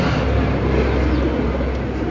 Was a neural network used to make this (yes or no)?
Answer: no